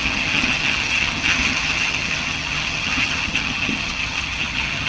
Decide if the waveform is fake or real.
fake